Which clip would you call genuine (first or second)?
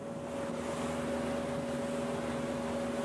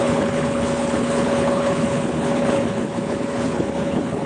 first